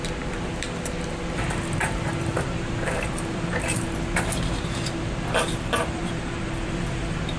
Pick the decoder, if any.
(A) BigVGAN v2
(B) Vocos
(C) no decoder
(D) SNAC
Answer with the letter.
A